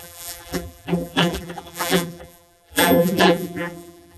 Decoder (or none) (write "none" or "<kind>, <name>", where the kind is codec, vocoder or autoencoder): vocoder, BigVGAN v2